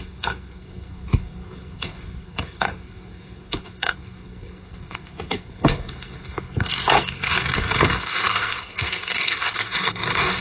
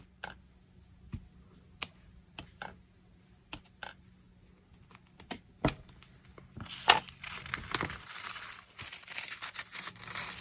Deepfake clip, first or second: first